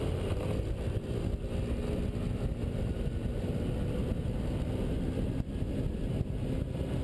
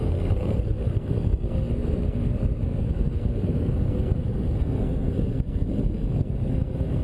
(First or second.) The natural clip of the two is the first